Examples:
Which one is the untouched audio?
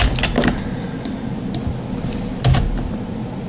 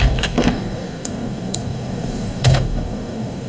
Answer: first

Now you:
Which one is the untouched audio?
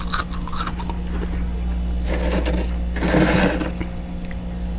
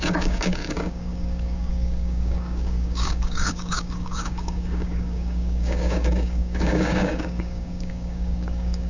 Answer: first